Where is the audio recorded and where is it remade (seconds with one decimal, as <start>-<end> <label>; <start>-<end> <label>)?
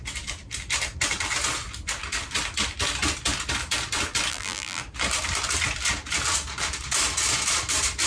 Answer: 0.0-4.3 recorded; 4.3-4.8 remade; 4.8-8.1 recorded